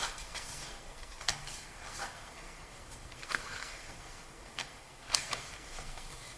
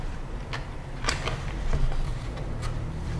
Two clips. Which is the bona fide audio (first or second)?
second